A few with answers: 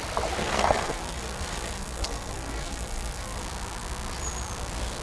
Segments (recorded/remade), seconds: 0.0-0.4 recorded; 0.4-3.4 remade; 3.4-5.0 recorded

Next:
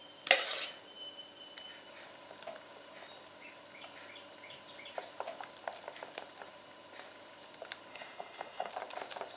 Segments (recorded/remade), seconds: 0.0-7.9 recorded; 7.9-8.7 remade; 8.7-9.4 recorded

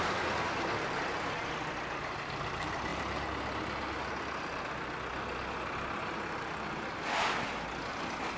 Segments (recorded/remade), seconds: 0.0-8.4 recorded

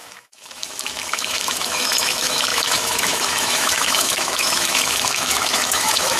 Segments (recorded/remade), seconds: 0.0-6.2 remade

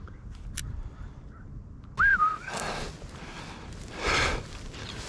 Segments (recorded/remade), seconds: 0.0-5.1 recorded

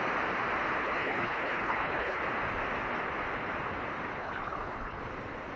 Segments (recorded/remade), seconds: 0.0-0.8 recorded; 0.8-2.2 remade; 2.2-4.2 recorded; 4.2-5.0 remade; 5.0-5.6 recorded

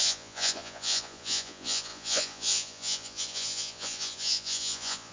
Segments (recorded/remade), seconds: 0.0-5.1 remade

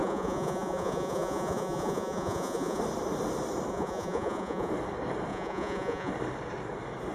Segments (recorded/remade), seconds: 0.0-2.8 remade; 2.8-3.7 recorded; 3.7-4.7 remade; 4.7-5.3 recorded; 5.3-6.1 remade; 6.1-7.1 recorded